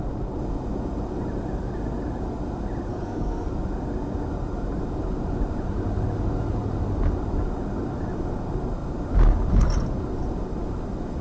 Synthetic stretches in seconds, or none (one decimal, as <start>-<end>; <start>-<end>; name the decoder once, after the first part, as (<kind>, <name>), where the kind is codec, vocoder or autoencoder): 2.9-3.5 (codec, SNAC)